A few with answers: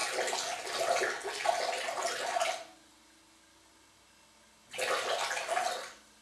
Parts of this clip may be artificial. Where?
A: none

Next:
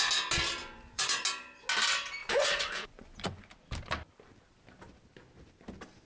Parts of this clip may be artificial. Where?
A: 0.6-1.2 (vocoder, Vocos); 2.2-3.5